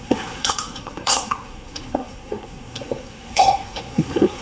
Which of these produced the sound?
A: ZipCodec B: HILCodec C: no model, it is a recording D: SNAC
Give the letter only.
D